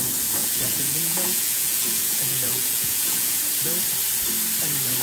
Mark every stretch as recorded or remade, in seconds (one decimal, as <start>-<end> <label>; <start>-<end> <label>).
0.0-0.4 recorded; 0.4-3.4 remade; 3.4-5.0 recorded